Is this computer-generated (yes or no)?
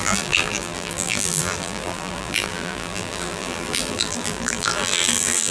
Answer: yes